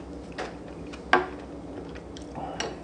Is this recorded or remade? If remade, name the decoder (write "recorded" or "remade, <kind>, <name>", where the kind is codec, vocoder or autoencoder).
recorded